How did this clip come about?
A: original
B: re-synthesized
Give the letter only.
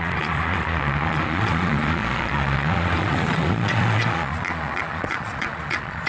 B